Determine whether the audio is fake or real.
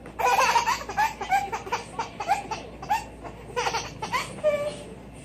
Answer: real